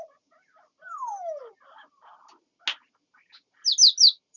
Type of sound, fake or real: real